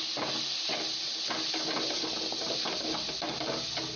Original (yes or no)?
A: yes